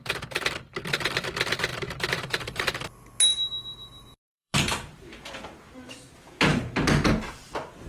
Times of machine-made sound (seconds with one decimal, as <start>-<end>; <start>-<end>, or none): 1.7-2.6; 3.3-5.3